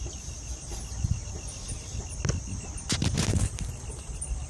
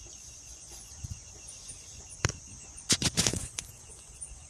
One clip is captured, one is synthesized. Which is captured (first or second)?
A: first